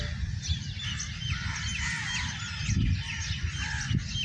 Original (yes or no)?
yes